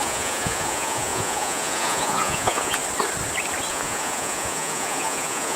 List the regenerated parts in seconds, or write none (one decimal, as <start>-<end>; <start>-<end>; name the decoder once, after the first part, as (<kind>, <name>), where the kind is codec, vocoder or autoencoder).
0.0-2.8 (vocoder, Vocos); 3.7-5.6